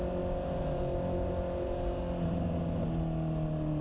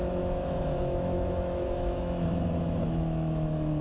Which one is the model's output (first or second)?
second